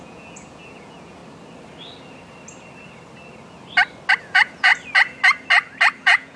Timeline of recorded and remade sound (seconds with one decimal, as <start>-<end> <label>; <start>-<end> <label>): 0.0-1.2 remade; 1.2-4.2 recorded; 4.2-4.7 remade; 4.7-6.0 recorded; 6.0-6.4 remade